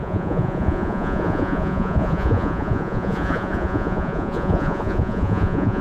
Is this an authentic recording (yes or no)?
no